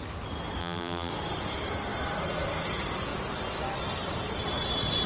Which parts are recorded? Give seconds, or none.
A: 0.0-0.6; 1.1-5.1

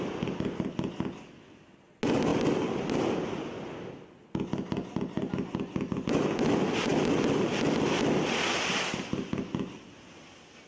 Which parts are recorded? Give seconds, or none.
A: 0.0-10.7

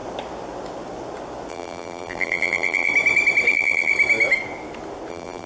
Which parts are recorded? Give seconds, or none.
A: 0.0-1.5; 2.9-3.5; 3.9-5.1